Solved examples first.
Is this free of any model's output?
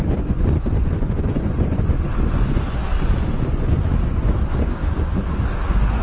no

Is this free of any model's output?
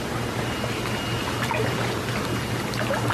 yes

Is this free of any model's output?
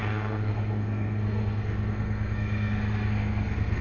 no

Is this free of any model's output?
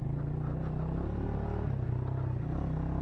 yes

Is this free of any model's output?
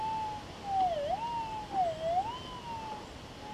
yes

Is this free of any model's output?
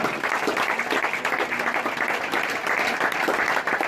yes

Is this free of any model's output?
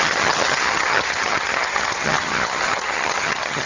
no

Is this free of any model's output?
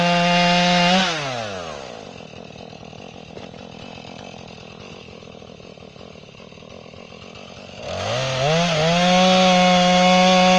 yes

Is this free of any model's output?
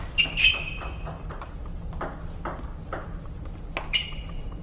yes